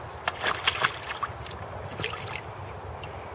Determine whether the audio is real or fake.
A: real